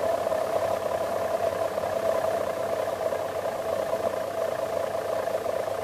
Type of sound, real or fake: real